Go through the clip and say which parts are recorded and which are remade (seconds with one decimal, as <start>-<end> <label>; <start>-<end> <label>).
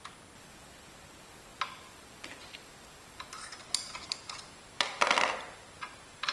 0.0-6.3 recorded